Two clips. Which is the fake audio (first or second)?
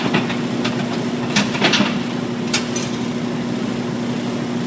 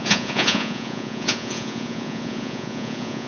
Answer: second